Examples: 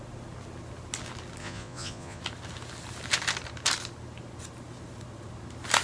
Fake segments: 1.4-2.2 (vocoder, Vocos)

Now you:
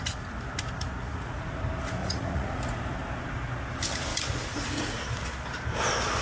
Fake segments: 1.1-1.6 (vocoder, Vocos); 2.0-2.6; 4.1-5.0

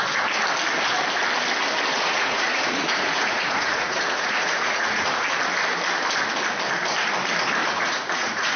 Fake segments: 1.9-5.1 (vocoder, Vocos); 7.6-8.6

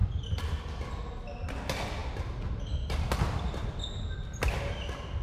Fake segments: none